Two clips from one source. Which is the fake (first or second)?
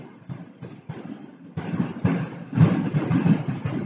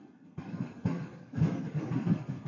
second